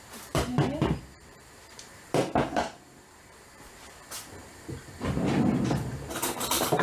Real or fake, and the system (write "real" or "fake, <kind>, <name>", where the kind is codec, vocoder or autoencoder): fake, vocoder, BigVGAN v2